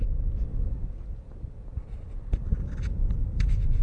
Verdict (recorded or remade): remade